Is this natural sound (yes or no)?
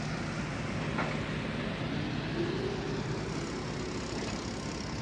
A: yes